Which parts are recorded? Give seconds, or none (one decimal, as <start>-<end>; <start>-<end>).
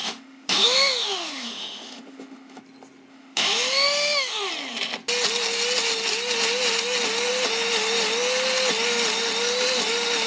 2.6-3.1; 4.5-10.3